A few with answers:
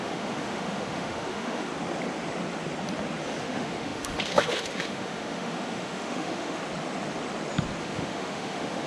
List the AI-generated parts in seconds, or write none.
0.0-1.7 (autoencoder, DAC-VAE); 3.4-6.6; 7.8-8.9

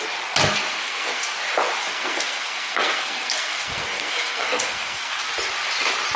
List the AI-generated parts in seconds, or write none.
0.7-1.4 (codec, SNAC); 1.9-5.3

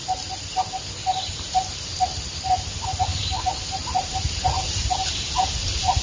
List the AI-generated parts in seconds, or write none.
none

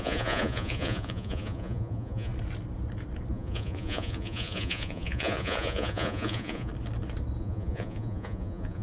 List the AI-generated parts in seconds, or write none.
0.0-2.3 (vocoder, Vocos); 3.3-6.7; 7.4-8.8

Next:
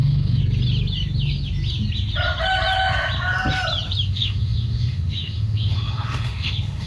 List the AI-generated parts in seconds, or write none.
0.0-0.4 (autoencoder, DAC-VAE); 4.1-6.9

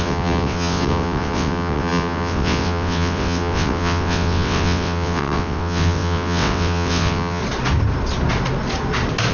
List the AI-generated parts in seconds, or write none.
0.0-7.4 (vocoder, WaveNeXt)

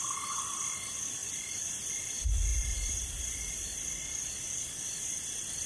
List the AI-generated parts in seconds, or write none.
1.2-2.0 (vocoder, BigVGAN v2); 2.5-5.7

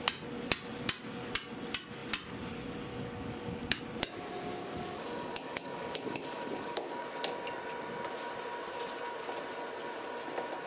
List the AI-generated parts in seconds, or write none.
2.9-3.8 (codec, DAC); 4.6-7.1